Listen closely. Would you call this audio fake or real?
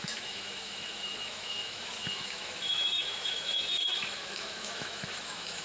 fake